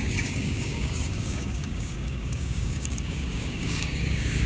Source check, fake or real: fake